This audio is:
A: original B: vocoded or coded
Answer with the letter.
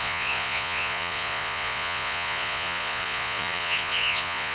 B